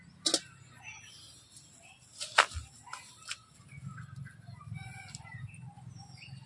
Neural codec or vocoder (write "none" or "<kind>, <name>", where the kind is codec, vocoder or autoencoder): none